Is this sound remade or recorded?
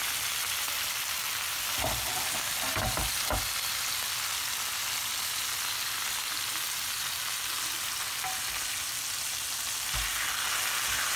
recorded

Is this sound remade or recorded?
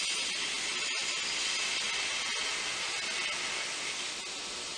recorded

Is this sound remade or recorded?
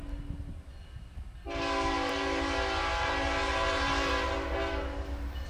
recorded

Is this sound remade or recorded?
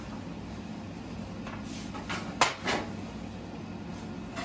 recorded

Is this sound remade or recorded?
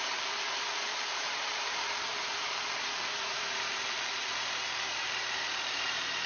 remade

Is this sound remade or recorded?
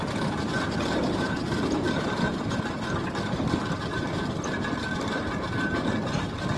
remade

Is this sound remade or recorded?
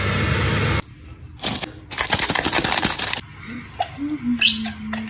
recorded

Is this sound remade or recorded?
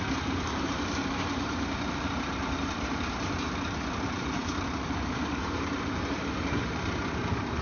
remade